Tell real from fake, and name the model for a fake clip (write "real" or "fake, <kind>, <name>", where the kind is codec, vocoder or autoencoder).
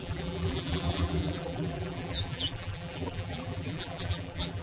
fake, vocoder, BigVGAN v2